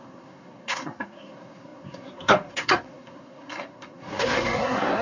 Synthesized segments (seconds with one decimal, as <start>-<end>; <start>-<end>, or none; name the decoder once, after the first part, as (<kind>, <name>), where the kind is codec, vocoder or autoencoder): 0.0-5.0 (codec, SNAC)